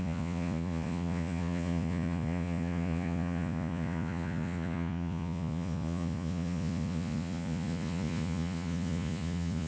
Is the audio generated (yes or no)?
yes